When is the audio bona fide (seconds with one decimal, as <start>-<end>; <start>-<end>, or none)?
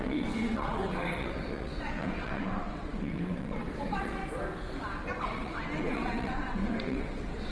4.2-5.2